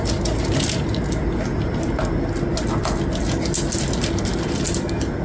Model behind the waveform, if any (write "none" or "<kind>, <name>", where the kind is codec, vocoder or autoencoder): none